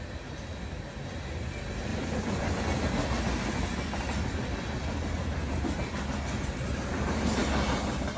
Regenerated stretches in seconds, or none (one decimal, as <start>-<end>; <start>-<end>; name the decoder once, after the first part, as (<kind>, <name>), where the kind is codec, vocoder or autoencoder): 1.9-2.6 (vocoder, Vocos)